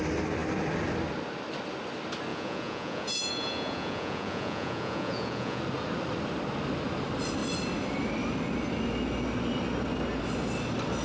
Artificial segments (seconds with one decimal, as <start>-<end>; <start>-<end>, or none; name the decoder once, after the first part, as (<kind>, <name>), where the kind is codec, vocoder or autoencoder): 2.3-5.6 (vocoder, Vocos)